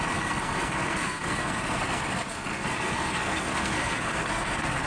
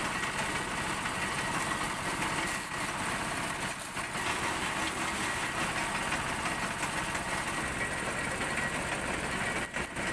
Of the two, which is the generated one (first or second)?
first